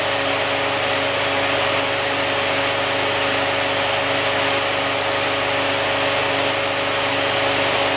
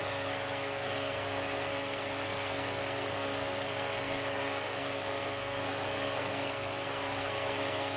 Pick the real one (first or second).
first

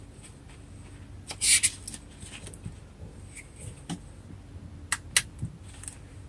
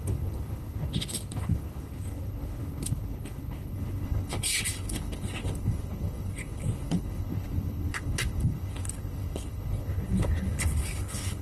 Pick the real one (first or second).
first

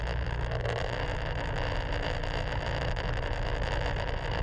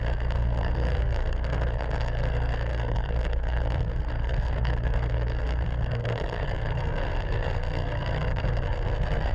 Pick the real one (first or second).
first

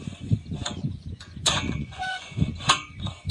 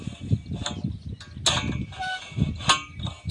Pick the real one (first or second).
second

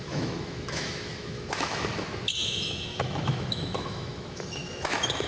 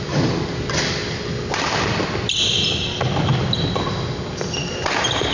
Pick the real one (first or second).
second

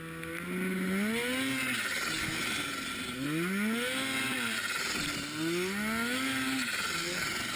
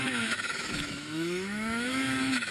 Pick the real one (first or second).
first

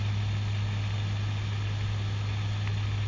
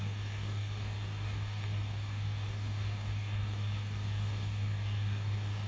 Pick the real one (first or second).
first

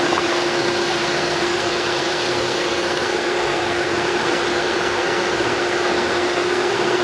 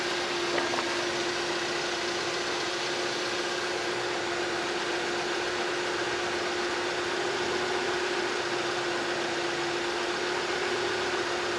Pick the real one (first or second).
second